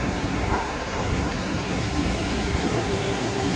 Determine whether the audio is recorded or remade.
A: remade